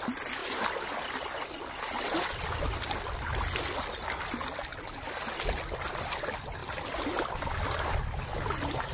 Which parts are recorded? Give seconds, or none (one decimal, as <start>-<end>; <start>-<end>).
0.0-6.6; 7.3-8.9